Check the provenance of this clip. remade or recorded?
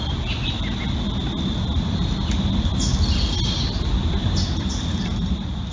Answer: recorded